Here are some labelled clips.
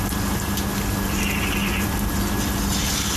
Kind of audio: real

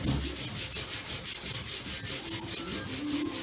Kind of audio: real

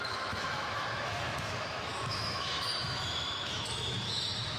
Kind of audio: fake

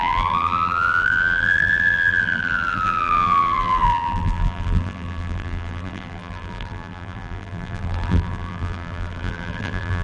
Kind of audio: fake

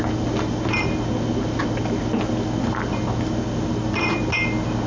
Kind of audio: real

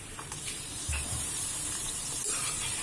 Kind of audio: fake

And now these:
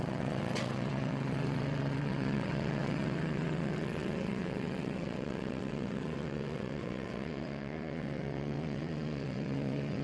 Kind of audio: fake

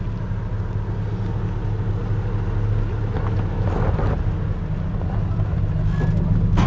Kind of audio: real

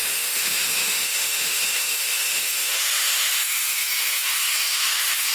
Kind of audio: fake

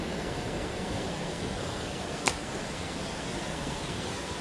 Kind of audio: fake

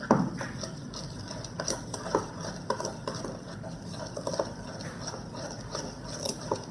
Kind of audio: real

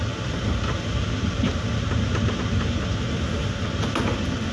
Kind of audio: real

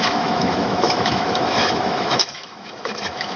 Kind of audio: fake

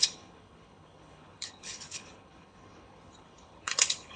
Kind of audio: fake